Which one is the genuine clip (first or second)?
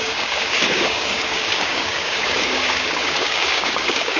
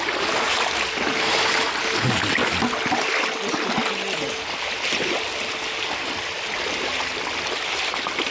second